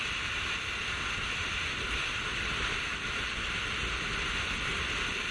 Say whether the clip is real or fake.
real